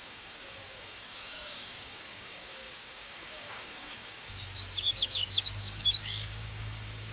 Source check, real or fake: fake